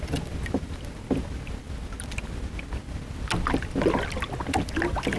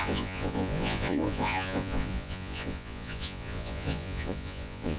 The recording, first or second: first